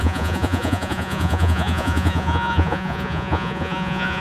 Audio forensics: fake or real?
fake